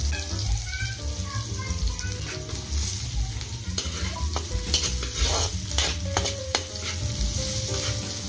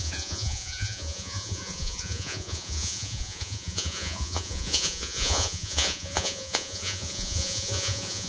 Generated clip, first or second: second